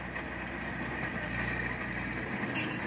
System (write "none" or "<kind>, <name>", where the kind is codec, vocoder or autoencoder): none